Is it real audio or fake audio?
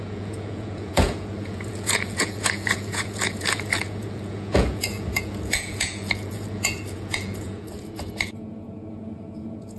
fake